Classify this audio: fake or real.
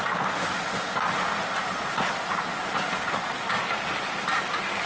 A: real